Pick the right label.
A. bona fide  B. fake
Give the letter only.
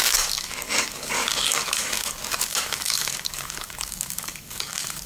B